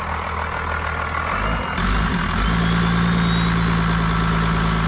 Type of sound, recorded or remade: recorded